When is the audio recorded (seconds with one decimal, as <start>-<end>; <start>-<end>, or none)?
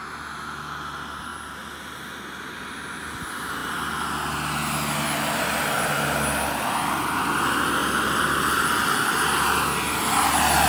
0.0-10.7